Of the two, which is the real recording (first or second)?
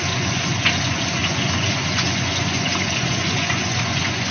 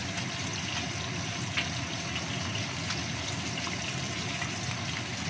second